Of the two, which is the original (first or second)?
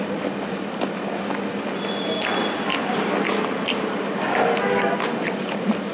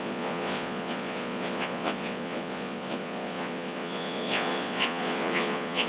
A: first